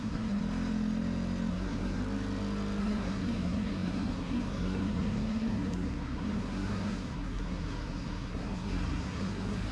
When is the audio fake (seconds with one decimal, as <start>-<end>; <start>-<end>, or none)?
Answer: 0.0-0.4; 1.5-2.0; 2.8-9.7